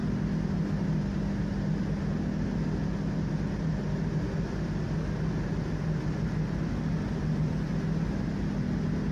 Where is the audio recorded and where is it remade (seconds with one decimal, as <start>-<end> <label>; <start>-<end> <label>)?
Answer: 0.0-9.1 recorded